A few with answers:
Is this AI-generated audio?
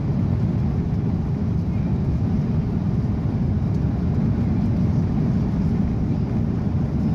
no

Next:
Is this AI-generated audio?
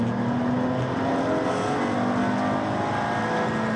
no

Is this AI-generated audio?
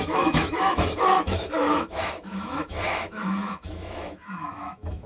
yes